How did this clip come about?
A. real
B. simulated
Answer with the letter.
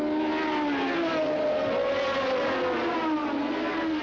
A